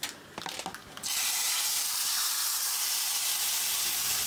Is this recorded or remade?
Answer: recorded